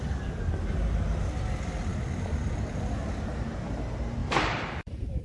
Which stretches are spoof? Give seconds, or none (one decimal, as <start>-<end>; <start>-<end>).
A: 4.2-5.2